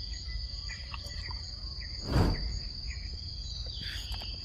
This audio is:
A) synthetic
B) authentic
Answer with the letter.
A